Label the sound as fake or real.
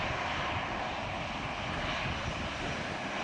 real